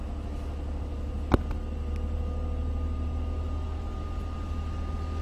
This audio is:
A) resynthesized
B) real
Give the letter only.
B